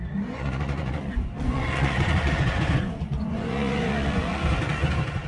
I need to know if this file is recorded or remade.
remade